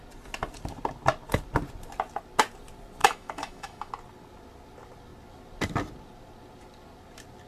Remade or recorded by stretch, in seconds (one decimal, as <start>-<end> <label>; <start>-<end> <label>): 0.0-3.0 recorded; 3.0-3.9 remade; 3.9-7.5 recorded